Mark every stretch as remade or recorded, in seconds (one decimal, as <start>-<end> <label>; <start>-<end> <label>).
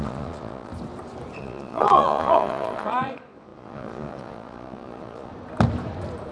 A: 0.0-0.7 remade; 0.7-1.4 recorded; 1.4-5.3 remade; 5.3-6.3 recorded